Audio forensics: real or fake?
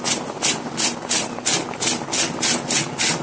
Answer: real